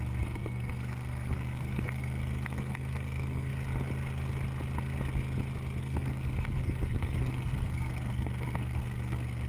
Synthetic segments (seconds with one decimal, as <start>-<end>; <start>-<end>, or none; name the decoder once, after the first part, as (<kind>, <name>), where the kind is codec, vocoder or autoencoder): 0.0-3.5 (codec, SNAC); 5.8-9.5